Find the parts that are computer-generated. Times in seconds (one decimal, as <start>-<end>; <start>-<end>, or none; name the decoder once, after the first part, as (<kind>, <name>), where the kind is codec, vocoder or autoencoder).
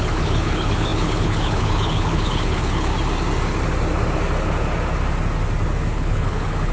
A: 0.0-2.9 (codec, HILCodec); 5.9-6.7